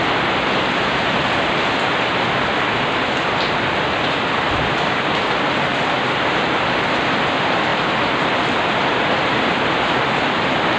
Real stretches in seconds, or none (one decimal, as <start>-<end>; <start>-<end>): none